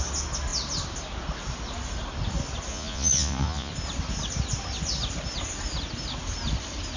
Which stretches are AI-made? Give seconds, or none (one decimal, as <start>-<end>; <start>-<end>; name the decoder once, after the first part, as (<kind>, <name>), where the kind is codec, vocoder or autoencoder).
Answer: 2.7-3.7 (vocoder, Vocos)